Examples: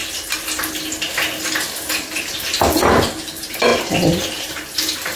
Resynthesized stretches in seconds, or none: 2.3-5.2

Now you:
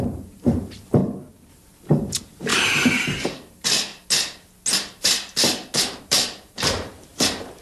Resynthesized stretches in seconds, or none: 0.0-1.0; 1.5-3.9; 6.0-7.6

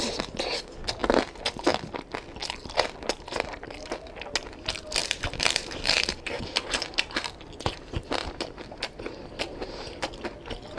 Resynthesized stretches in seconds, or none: 2.4-3.9; 5.0-10.1

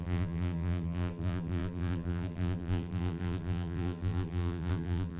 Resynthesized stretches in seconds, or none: 0.0-5.2

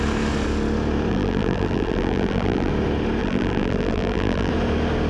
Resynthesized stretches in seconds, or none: 1.1-2.7; 3.2-4.5

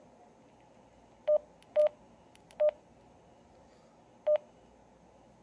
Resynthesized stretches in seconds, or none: none

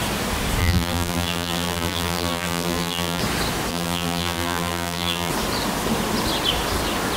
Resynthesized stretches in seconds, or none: 0.6-3.2; 3.7-5.3